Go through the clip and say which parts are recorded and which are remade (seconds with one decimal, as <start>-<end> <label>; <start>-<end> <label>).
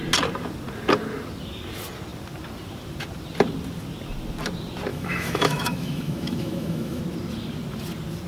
0.0-4.9 recorded; 4.9-7.0 remade; 7.0-8.3 recorded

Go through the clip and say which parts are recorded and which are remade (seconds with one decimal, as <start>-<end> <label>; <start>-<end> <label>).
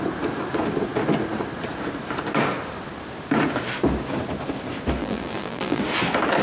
0.0-5.0 recorded; 5.0-5.8 remade; 5.8-6.4 recorded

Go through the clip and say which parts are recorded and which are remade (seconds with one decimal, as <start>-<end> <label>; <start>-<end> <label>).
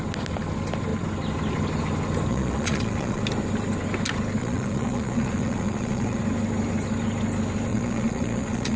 0.0-2.3 recorded; 2.3-3.2 remade; 3.2-4.4 recorded; 4.4-6.2 remade; 6.2-7.7 recorded; 7.7-8.8 remade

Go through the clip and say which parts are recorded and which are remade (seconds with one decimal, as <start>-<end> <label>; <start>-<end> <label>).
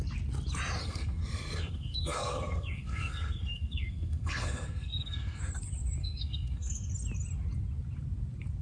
0.0-0.8 recorded; 0.8-5.4 remade; 5.4-6.0 recorded; 6.0-6.9 remade; 6.9-8.6 recorded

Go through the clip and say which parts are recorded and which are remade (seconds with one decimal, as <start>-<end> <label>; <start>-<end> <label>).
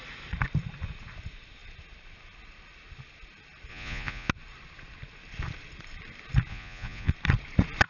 0.0-3.7 recorded; 3.7-4.3 remade; 4.3-6.5 recorded; 6.5-7.1 remade; 7.1-7.9 recorded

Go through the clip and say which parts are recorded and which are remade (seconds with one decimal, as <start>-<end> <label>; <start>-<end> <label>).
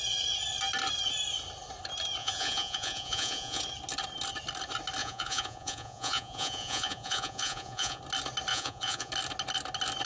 0.0-2.2 recorded; 2.2-3.6 remade; 3.6-5.0 recorded; 5.0-8.0 remade; 8.0-8.5 recorded; 8.5-9.1 remade; 9.1-10.1 recorded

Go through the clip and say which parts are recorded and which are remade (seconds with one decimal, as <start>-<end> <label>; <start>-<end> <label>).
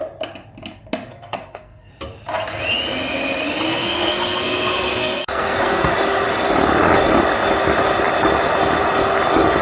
0.0-1.1 recorded; 1.1-1.9 remade; 1.9-3.7 recorded; 3.7-5.9 remade; 5.9-9.6 recorded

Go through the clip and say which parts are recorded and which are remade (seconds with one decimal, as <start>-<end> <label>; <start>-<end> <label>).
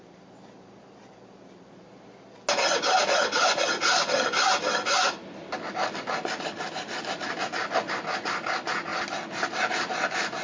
0.0-10.4 recorded